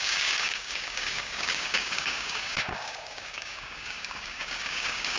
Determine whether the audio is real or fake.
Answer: fake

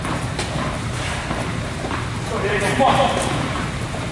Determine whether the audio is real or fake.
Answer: fake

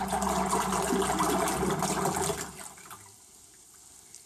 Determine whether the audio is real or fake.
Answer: real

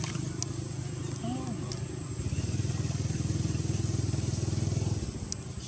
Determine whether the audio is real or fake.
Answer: real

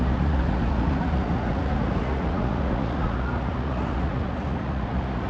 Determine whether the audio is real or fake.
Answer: fake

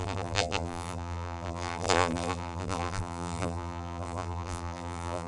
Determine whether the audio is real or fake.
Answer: fake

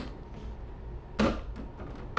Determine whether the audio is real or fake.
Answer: real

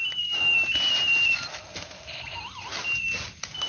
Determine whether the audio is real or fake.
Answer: real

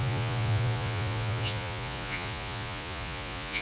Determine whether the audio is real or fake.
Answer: fake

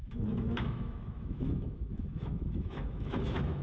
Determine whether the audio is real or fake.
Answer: fake